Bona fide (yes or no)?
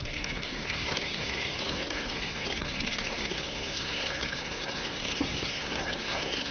no